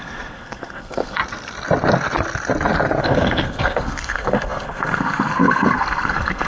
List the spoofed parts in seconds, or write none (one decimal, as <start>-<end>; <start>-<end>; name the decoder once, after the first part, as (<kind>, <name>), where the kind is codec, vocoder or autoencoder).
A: 0.0-1.2 (codec, SNAC); 3.0-6.5